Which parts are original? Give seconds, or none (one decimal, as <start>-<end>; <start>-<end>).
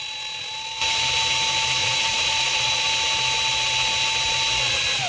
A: 0.0-1.8; 2.8-5.1